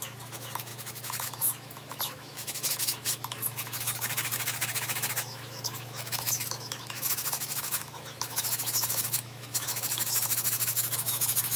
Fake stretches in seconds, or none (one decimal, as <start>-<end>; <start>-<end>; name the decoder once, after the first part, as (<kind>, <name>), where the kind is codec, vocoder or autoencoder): 0.0-11.6 (autoencoder, DAC-VAE)